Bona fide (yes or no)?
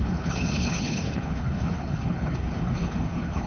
no